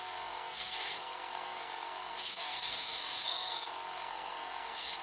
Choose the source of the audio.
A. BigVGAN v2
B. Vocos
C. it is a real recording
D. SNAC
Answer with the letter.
D